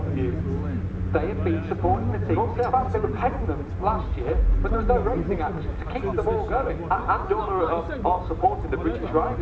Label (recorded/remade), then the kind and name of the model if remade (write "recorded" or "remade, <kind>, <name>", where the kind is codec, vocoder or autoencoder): recorded